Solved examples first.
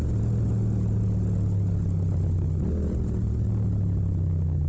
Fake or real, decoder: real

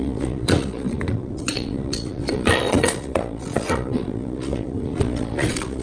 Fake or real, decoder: fake, vocoder, Vocos